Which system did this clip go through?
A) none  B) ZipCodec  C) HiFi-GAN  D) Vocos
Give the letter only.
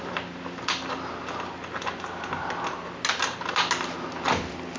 A